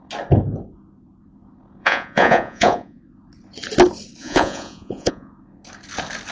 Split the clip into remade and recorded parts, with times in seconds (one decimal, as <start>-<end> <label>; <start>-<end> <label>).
0.0-1.8 recorded; 1.8-3.0 remade; 3.0-4.2 recorded; 4.2-5.3 remade; 5.3-6.3 recorded